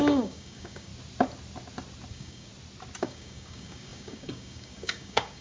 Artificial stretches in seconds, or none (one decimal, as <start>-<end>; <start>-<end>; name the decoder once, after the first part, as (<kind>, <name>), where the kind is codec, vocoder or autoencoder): 0.0-0.9 (codec, DAC); 2.1-2.5; 3.0-5.4